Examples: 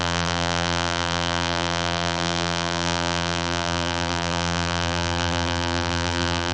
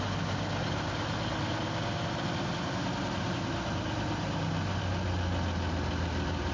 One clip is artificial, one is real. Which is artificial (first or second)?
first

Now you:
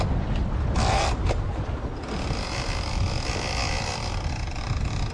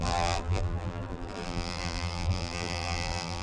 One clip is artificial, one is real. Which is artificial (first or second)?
second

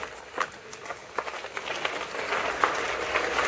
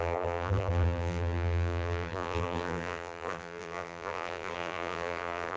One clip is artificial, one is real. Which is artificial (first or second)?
second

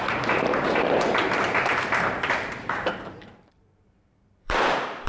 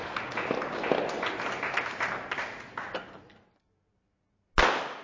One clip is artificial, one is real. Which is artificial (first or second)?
first